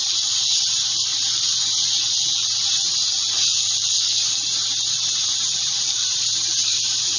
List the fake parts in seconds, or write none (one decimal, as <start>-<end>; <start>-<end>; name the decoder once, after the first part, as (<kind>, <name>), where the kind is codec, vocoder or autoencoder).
0.0-1.1 (vocoder, BigVGAN v2); 5.4-7.2